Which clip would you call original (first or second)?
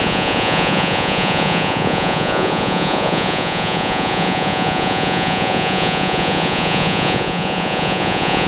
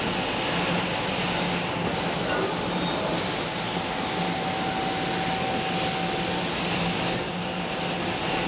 second